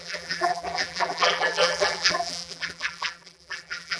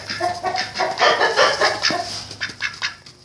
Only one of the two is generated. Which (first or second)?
first